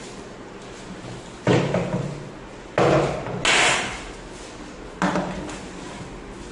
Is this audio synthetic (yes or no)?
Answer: no